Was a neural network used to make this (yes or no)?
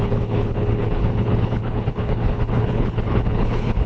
yes